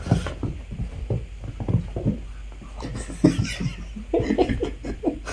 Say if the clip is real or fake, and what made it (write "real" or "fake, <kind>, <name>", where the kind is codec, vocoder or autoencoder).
real